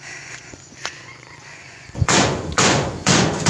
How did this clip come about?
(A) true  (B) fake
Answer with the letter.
B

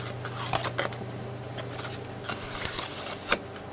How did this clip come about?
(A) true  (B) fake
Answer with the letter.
B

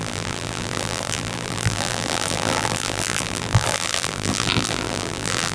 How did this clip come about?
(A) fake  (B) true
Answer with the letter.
A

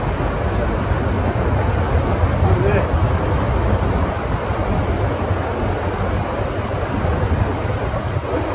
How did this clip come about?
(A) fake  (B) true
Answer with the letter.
B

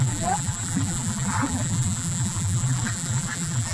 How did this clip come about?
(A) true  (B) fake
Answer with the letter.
B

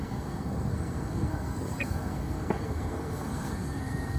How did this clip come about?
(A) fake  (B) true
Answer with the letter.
A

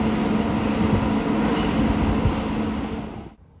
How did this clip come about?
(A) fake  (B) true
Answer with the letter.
B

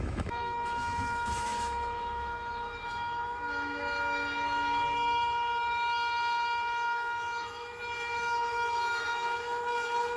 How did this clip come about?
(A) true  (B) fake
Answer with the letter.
B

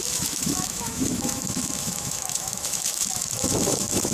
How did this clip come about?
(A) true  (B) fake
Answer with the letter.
B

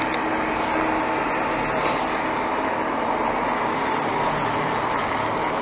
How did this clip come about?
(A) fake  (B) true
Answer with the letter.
B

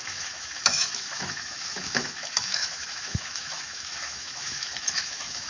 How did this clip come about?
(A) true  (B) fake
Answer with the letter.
B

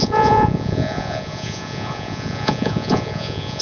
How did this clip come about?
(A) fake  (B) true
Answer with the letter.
A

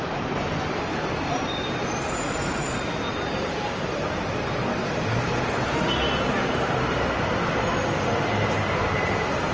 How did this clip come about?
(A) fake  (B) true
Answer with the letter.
A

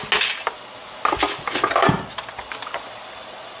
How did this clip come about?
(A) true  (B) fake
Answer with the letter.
A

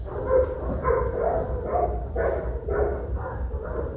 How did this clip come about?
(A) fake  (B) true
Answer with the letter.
B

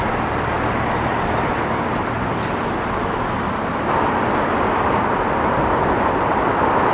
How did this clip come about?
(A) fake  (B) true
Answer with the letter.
B